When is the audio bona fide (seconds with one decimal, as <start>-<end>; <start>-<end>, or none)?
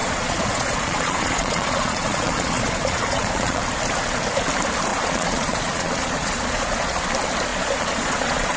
3.6-4.9; 7.0-7.5